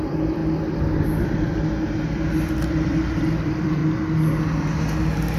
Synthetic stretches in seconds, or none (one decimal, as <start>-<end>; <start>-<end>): 0.0-0.4; 1.9-3.8